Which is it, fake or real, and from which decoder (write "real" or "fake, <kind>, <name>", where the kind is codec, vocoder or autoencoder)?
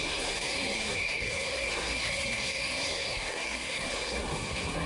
fake, codec, SNAC